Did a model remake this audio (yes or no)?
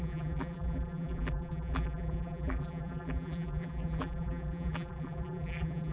yes